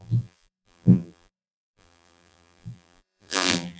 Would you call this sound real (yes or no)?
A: no